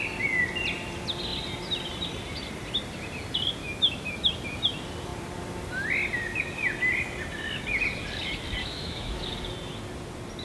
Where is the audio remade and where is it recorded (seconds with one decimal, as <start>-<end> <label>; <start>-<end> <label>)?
0.0-3.6 recorded; 3.6-4.3 remade; 4.3-8.6 recorded; 8.6-9.2 remade; 9.2-10.4 recorded